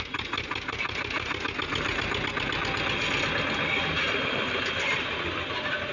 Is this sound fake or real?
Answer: real